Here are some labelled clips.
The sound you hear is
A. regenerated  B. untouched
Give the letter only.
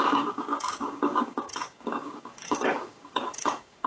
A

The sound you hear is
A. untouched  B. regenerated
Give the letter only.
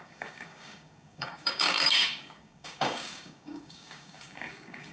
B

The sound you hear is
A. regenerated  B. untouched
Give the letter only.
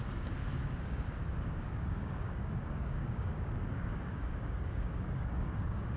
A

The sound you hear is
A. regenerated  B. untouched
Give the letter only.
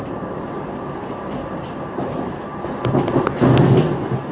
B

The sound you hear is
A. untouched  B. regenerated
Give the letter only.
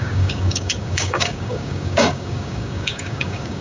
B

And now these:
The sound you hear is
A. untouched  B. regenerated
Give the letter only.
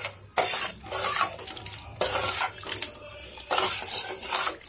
A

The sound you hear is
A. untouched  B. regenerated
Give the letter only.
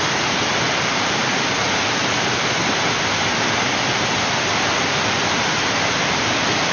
A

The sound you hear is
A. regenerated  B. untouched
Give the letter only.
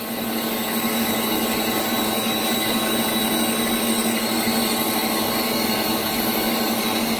A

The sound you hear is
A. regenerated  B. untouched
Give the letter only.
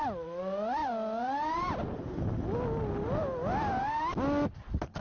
B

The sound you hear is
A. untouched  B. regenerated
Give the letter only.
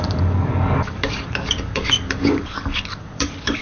B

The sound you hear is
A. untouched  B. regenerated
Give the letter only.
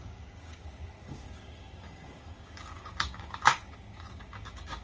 B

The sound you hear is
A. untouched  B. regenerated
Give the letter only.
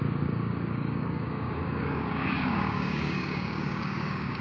B